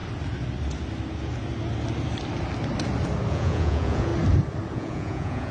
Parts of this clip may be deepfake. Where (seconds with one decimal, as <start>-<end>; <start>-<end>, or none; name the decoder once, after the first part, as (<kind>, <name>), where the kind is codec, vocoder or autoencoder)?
3.3-4.1 (vocoder, Vocos); 4.7-5.5